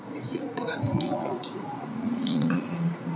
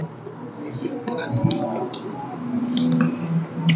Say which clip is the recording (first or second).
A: second